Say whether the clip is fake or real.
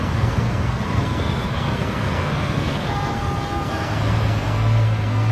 fake